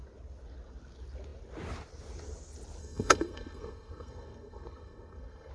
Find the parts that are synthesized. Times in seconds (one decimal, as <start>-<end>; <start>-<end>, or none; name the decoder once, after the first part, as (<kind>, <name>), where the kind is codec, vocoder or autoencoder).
2.8-5.5 (codec, SNAC)